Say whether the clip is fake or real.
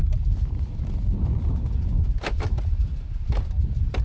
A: real